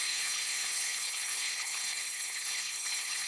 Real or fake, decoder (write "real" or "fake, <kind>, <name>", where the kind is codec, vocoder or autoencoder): fake, codec, HILCodec